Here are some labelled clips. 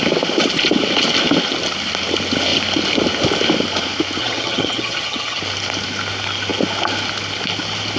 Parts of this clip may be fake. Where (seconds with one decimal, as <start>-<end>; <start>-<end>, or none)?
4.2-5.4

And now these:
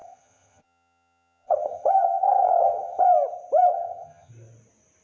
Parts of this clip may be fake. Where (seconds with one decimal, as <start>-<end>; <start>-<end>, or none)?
0.0-3.0; 3.7-4.3

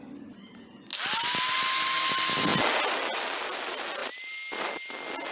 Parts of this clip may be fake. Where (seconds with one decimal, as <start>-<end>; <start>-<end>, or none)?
none

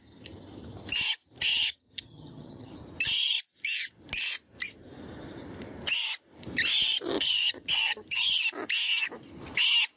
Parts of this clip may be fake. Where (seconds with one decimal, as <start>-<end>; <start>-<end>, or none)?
1.5-2.7; 7.1-8.4

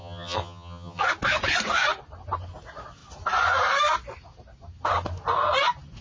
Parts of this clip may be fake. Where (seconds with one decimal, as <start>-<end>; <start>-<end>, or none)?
0.0-1.0